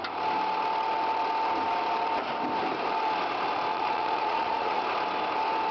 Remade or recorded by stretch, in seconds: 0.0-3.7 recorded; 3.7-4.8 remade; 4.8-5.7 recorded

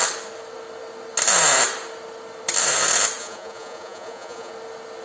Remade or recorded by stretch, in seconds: 0.0-3.2 recorded; 3.2-4.5 remade; 4.5-5.0 recorded